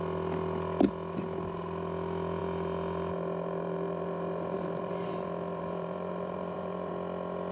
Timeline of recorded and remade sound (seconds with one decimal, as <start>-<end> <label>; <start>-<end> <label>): 0.0-2.4 recorded; 2.4-6.9 remade; 6.9-7.5 recorded